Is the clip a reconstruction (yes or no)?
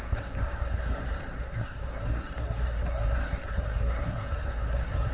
yes